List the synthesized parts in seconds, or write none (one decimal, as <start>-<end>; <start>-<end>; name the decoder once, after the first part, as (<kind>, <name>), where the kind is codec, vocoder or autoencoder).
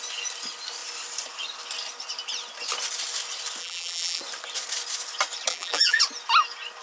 3.6-4.2 (vocoder, BigVGAN v2); 5.5-6.0